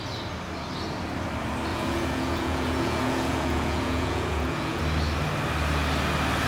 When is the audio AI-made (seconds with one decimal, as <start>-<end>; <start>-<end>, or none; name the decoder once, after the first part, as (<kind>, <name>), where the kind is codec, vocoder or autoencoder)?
1.7-4.8 (vocoder, Vocos)